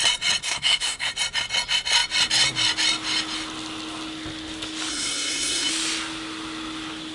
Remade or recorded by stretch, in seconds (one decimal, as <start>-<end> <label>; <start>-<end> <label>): 0.0-0.4 recorded; 0.4-1.1 remade; 1.1-4.9 recorded; 4.9-5.7 remade; 5.7-7.1 recorded